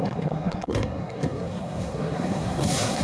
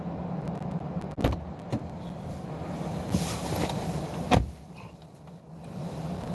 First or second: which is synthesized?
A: first